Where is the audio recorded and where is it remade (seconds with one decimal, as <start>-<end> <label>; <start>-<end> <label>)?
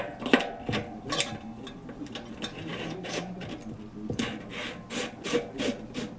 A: 0.0-6.2 recorded